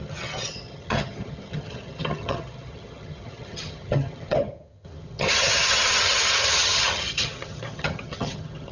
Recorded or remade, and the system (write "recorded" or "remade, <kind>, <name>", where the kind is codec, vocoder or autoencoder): remade, vocoder, HiFi-GAN